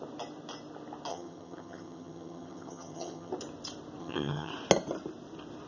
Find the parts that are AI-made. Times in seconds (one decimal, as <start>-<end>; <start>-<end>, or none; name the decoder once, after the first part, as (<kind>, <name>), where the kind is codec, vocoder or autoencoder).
1.1-3.3 (vocoder, HiFi-GAN); 4.0-4.5